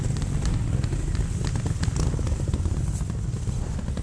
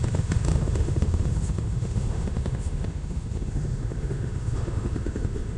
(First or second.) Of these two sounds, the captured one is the first